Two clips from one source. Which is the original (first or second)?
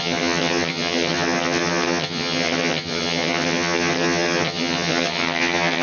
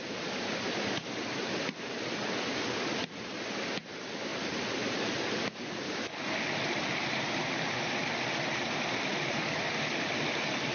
second